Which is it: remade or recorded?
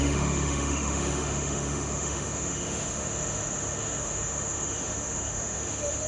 remade